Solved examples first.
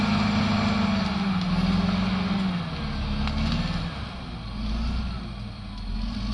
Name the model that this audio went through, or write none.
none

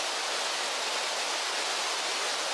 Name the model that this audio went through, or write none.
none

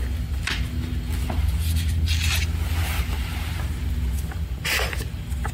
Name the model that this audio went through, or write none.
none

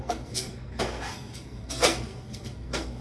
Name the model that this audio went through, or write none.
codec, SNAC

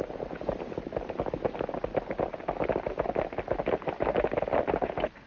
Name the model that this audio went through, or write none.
none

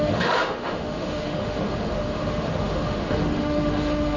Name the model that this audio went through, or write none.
autoencoder, DAC-VAE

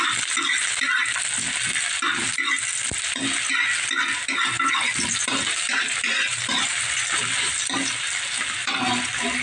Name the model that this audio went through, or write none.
none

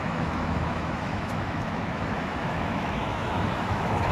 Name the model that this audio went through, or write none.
autoencoder, DAC-VAE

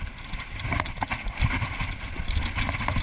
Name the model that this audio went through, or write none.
none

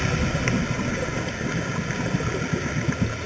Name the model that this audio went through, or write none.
none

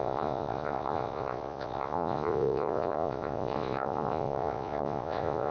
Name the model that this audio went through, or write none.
vocoder, Vocos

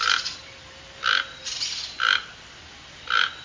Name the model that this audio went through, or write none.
none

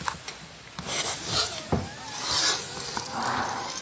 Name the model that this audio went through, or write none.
none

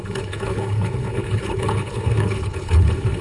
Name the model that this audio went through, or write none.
codec, HILCodec